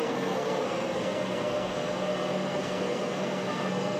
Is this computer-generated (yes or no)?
yes